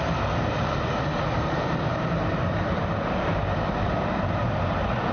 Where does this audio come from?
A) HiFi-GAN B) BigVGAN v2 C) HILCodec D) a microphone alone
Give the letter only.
B